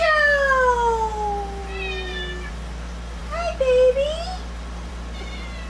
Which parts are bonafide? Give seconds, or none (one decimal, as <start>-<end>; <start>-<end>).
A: 0.0-5.7